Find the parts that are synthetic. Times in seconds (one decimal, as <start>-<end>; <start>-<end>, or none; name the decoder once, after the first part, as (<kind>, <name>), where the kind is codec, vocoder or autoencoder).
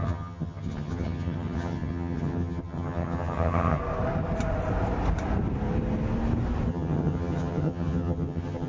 0.0-3.8 (vocoder, HiFi-GAN); 6.7-8.7